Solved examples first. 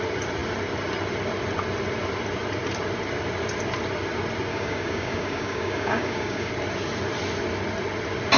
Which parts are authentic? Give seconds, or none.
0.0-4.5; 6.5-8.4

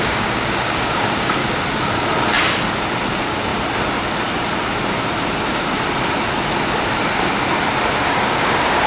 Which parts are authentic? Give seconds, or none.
1.4-3.1; 3.5-8.0

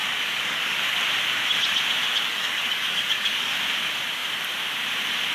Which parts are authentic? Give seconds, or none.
1.0-2.3; 3.6-5.3